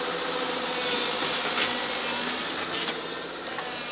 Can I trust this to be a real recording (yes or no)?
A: yes